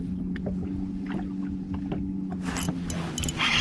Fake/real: real